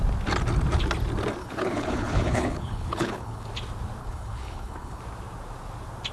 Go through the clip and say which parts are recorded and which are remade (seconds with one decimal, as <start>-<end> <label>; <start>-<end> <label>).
0.0-1.4 recorded; 1.4-3.5 remade; 3.5-4.0 recorded; 4.0-5.0 remade; 5.0-6.1 recorded